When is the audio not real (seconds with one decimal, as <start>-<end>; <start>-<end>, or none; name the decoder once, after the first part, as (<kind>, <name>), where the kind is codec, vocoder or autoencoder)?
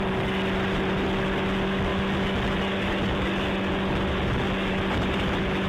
none